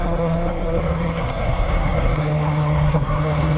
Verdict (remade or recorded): remade